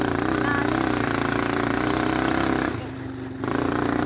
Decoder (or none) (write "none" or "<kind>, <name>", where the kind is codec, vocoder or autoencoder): none